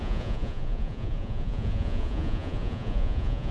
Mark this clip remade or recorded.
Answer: remade